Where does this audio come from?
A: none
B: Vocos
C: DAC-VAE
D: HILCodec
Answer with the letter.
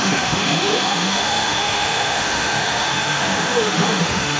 C